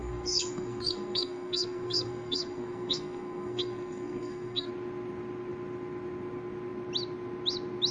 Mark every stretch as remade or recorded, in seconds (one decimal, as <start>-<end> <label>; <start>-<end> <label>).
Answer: 0.0-4.7 remade; 4.7-7.9 recorded